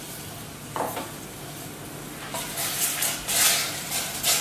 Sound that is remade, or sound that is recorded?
recorded